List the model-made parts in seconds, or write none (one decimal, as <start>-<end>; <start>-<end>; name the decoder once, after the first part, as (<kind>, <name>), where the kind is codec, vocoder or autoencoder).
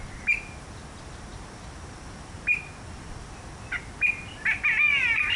none